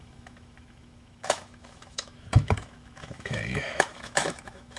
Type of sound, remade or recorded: remade